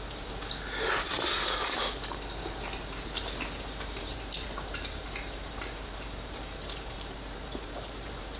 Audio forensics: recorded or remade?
remade